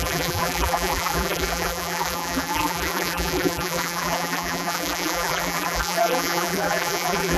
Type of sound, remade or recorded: remade